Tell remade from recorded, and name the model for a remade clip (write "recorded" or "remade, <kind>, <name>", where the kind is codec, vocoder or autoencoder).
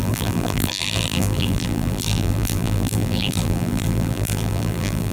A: remade, vocoder, BigVGAN v2